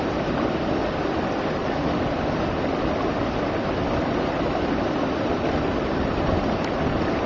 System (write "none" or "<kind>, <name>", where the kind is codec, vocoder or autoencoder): none